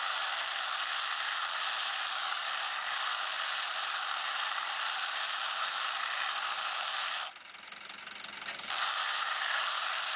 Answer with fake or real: real